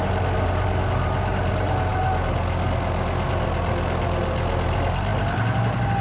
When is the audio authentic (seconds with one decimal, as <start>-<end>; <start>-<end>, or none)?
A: 0.0-6.0